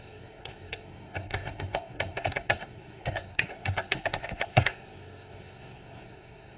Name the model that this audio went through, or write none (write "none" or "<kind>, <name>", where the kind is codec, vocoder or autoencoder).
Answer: codec, SNAC